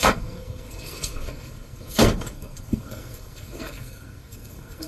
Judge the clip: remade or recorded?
remade